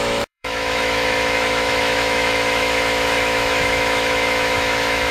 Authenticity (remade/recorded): remade